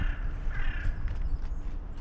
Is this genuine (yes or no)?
yes